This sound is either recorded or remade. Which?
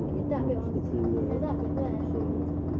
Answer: recorded